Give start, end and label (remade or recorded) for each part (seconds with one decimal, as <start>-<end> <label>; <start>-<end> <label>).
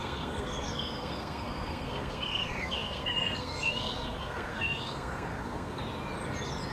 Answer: 0.0-5.8 remade; 5.8-6.7 recorded